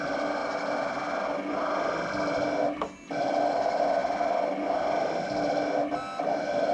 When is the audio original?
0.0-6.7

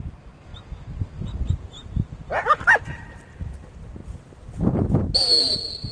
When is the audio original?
0.0-5.9